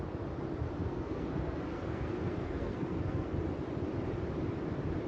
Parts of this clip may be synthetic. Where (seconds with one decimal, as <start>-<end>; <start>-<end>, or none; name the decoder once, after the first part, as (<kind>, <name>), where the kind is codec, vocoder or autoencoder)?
0.8-3.3 (codec, SNAC)